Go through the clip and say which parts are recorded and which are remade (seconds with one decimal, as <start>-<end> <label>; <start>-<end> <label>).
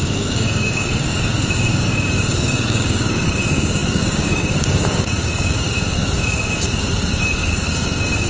0.0-8.3 remade